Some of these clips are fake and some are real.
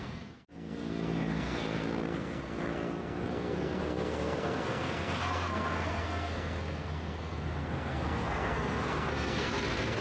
fake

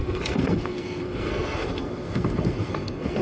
fake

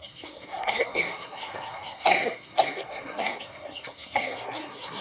fake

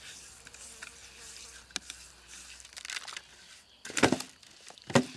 real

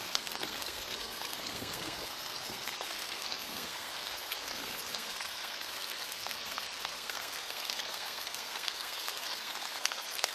fake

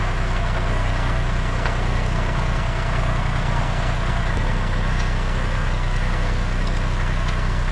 fake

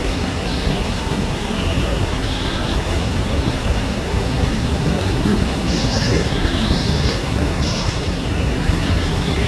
fake